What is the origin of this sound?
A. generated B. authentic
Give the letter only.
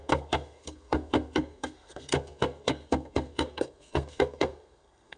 A